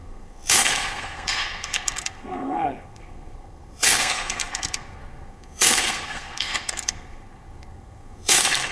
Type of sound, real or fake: fake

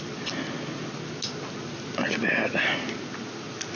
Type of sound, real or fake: real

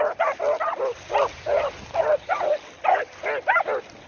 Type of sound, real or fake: real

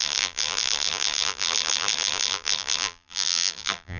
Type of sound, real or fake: fake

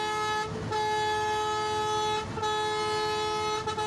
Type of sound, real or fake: real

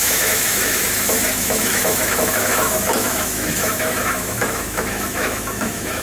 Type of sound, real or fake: fake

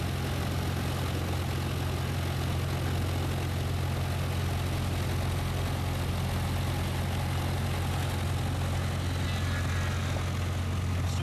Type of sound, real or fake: real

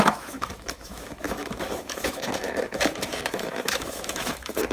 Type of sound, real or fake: fake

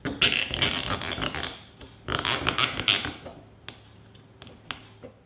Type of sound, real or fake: real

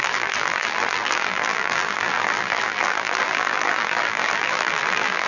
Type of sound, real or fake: fake